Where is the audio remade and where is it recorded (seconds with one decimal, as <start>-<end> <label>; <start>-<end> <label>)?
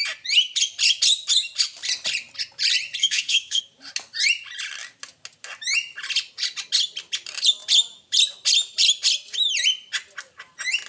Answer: 0.0-3.0 recorded; 3.0-3.6 remade; 3.6-10.9 recorded